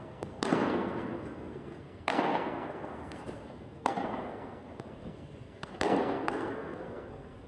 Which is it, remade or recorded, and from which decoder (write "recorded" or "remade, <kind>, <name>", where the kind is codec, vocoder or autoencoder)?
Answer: remade, codec, SNAC